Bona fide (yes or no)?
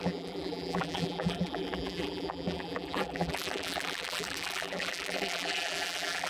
no